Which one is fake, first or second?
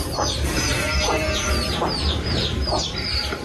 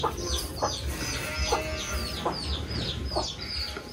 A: first